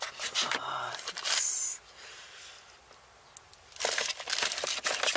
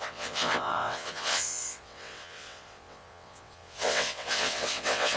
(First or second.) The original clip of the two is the first